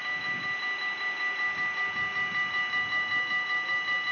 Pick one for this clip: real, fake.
real